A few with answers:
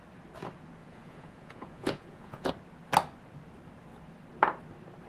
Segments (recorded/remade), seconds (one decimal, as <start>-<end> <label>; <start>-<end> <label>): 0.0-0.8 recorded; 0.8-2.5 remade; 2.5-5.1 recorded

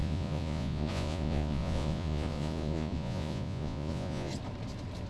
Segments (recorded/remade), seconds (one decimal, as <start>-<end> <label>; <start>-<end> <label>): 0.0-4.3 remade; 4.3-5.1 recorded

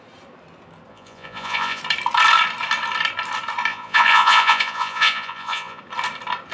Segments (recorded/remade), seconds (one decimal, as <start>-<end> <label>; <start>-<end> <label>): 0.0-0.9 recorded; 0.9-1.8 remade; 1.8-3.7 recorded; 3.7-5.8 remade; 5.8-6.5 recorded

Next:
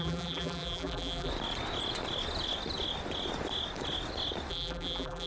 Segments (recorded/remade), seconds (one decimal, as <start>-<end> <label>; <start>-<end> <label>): 0.0-1.3 remade; 1.3-4.5 recorded; 4.5-5.3 remade